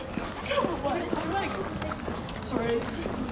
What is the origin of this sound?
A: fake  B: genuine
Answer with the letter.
B